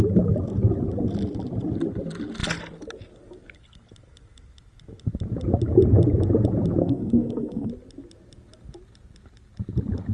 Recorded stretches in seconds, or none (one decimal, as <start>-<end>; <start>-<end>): 0.0-6.8; 7.7-10.1